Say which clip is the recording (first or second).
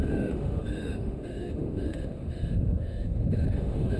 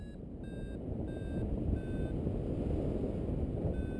second